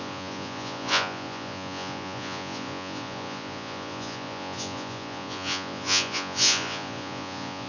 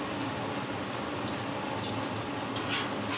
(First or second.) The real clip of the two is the second